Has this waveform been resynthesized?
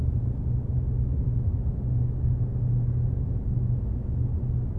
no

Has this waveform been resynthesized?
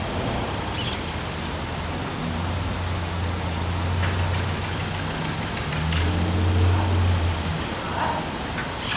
no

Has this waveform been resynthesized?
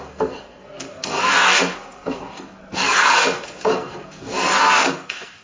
yes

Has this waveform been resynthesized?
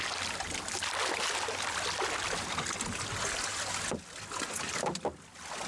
no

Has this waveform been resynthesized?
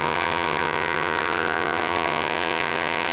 yes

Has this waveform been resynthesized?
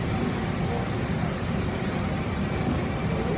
no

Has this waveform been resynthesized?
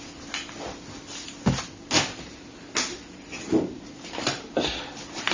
no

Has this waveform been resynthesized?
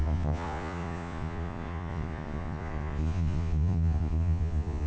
yes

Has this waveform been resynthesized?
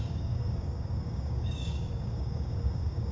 yes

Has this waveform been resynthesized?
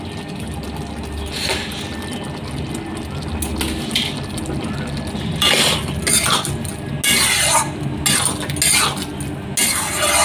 no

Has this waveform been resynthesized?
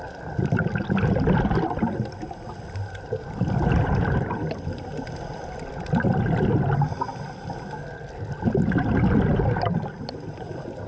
no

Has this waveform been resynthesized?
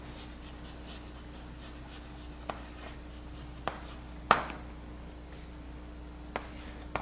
no